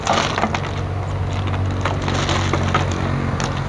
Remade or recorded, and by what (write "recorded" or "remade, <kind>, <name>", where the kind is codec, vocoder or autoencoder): recorded